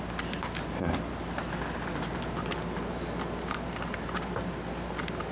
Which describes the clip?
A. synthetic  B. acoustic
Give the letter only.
B